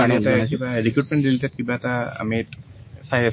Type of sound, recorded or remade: remade